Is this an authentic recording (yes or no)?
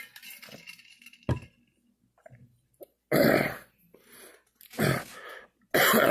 yes